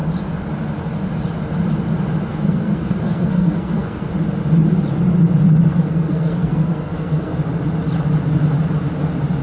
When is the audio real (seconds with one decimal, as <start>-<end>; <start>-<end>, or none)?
0.0-2.3; 4.1-5.7; 7.3-9.4